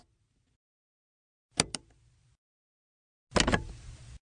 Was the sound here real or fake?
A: real